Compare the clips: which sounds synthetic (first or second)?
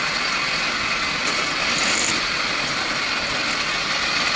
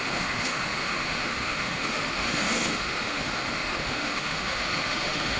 second